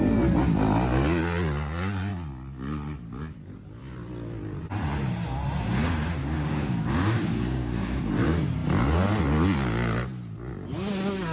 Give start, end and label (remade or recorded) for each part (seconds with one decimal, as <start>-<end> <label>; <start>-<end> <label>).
0.0-6.2 recorded; 6.2-8.0 remade; 8.0-11.3 recorded